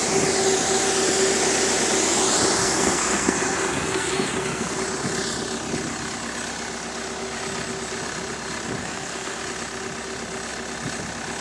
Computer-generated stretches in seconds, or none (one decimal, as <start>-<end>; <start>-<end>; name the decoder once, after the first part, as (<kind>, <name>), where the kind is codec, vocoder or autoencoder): 2.6-4.8 (codec, SNAC); 8.8-9.4